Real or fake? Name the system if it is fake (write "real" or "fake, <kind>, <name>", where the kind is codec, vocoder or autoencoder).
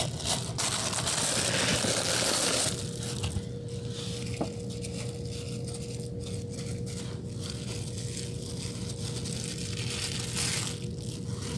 real